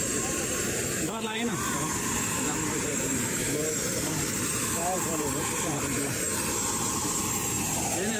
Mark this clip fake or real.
fake